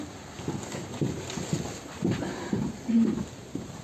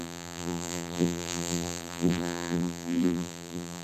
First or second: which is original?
first